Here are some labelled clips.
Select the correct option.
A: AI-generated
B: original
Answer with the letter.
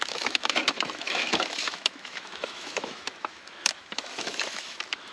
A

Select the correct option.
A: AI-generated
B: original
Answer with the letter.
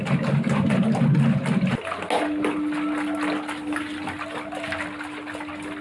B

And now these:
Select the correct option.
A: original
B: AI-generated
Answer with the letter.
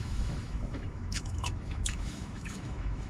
B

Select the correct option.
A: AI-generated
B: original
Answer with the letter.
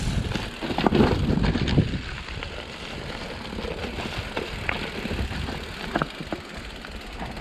B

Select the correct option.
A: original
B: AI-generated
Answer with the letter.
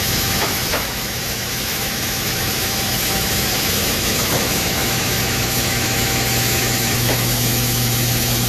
B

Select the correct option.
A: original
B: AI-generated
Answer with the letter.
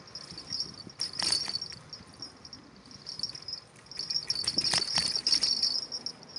A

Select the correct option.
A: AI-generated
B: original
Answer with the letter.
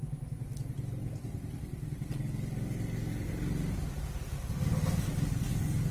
B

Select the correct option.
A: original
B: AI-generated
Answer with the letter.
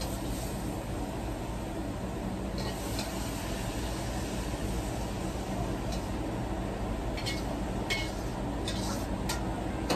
A